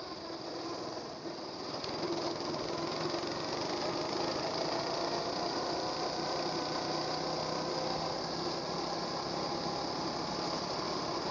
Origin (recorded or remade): recorded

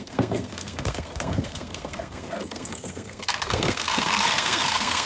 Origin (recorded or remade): remade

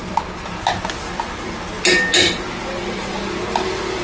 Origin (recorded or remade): recorded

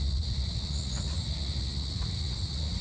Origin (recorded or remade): remade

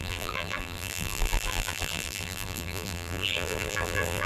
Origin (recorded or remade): remade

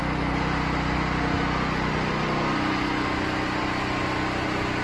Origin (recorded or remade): recorded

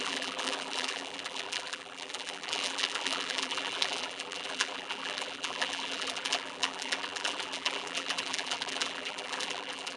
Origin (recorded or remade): remade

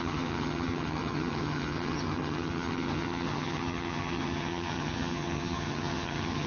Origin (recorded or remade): remade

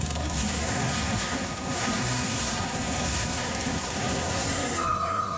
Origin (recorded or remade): remade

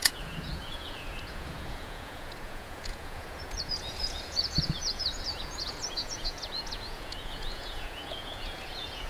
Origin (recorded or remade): remade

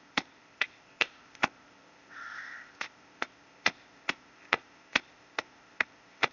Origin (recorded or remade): remade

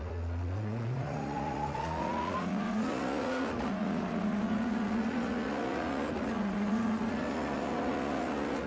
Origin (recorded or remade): remade